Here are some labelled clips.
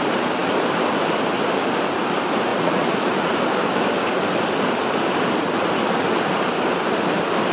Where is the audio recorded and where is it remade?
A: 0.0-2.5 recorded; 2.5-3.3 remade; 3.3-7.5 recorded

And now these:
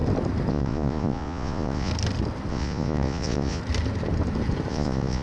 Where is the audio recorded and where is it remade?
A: 0.0-0.5 recorded; 0.5-1.9 remade; 1.9-2.5 recorded; 2.5-3.6 remade; 3.6-4.7 recorded; 4.7-5.2 remade

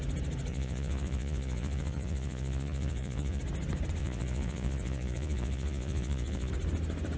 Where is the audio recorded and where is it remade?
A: 0.0-0.5 recorded; 0.5-3.4 remade; 3.4-4.0 recorded; 4.0-6.5 remade; 6.5-7.2 recorded

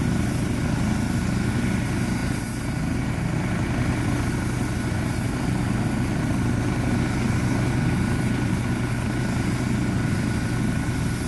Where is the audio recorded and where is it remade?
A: 0.0-11.3 recorded

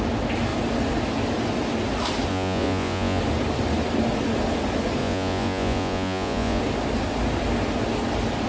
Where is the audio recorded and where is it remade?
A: 0.0-2.3 recorded; 2.3-3.2 remade; 3.2-5.0 recorded; 5.0-6.6 remade; 6.6-8.5 recorded

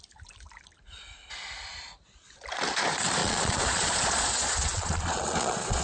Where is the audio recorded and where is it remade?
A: 0.0-3.2 recorded; 3.2-5.8 remade

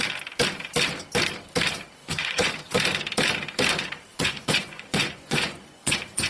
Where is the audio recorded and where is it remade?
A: 0.0-2.0 recorded; 2.0-2.5 remade; 2.5-4.1 recorded; 4.1-6.3 remade

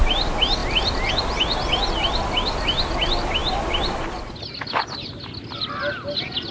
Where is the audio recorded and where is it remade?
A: 0.0-6.5 recorded